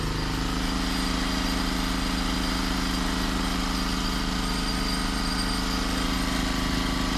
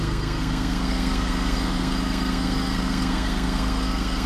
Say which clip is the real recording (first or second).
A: first